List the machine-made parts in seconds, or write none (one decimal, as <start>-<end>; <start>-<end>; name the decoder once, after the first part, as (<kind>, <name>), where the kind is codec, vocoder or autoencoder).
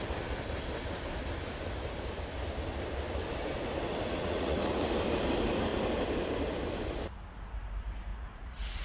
4.1-4.9 (vocoder, Vocos); 8.1-8.8